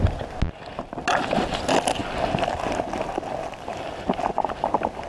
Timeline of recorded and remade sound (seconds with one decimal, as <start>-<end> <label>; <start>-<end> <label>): 0.0-5.1 recorded